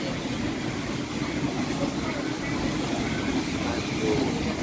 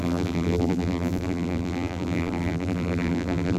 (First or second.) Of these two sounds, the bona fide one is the first